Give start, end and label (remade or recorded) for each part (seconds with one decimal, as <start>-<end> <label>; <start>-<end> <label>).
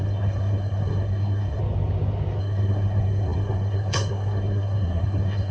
0.0-1.6 remade; 1.6-2.4 recorded; 2.4-5.5 remade